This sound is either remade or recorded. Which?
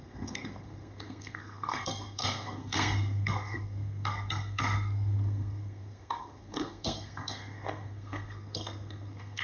remade